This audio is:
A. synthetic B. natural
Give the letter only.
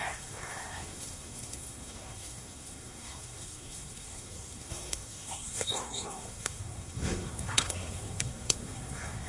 A